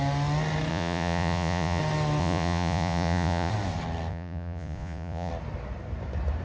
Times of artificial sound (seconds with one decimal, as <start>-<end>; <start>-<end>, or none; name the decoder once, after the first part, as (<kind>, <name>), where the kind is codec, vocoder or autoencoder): 0.7-1.8 (vocoder, Vocos); 2.2-3.5; 4.1-5.3